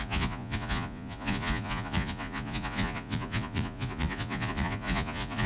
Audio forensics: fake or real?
fake